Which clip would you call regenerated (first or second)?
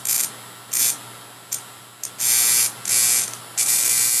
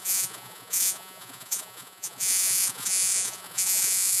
second